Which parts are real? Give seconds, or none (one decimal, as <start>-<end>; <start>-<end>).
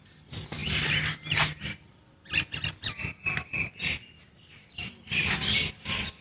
0.0-6.2